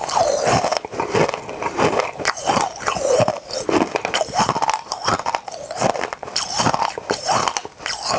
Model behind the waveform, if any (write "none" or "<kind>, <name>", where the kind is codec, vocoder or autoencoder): none